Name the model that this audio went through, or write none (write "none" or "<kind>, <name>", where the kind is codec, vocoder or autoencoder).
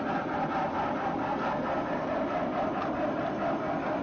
none